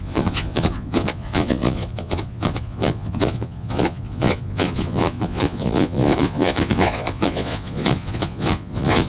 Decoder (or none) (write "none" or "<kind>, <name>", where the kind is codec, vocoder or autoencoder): vocoder, Vocos